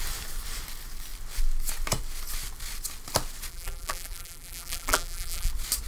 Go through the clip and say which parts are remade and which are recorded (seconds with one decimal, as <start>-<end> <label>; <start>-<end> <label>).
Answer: 0.0-3.5 recorded; 3.5-5.5 remade; 5.5-5.9 recorded